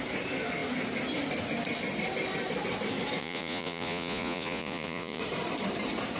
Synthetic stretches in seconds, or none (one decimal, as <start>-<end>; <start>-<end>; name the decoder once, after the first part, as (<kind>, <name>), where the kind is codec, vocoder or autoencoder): 3.2-5.2 (vocoder, Vocos)